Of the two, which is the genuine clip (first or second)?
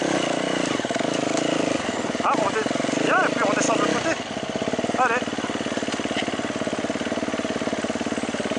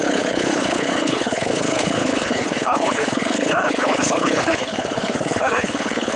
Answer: first